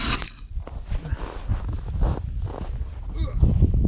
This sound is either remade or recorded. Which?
recorded